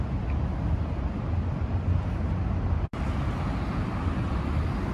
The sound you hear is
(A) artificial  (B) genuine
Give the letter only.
B